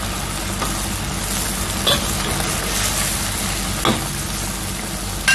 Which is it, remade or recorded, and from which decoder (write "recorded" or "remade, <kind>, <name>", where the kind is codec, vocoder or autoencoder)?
recorded